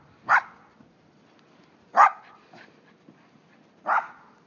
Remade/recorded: remade